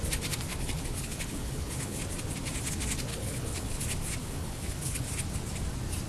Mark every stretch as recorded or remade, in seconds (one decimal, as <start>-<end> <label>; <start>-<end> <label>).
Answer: 0.0-0.5 recorded; 0.5-2.0 remade; 2.0-3.1 recorded; 3.1-3.8 remade; 3.8-4.2 recorded; 4.2-5.1 remade; 5.1-6.1 recorded